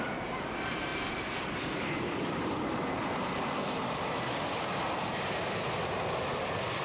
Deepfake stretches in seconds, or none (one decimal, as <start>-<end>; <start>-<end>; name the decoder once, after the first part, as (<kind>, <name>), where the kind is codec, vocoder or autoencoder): none